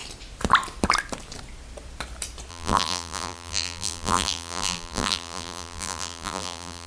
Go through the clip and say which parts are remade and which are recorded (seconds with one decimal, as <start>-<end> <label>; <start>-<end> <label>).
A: 0.0-2.5 recorded; 2.5-6.9 remade